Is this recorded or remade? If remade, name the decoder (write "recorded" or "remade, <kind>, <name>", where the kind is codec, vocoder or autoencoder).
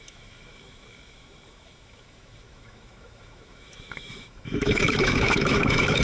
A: remade, autoencoder, DAC-VAE